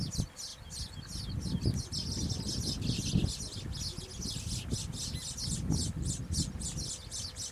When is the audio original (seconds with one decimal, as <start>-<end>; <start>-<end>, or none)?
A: 0.0-7.5